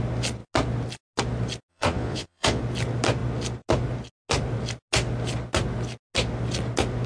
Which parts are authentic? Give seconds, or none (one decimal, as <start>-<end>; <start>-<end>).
0.0-1.7; 2.6-7.1